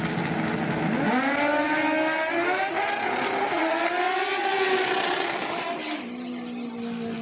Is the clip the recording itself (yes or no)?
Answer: yes